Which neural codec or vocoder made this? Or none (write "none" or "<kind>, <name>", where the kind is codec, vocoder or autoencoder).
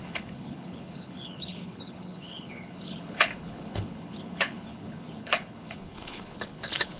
codec, HILCodec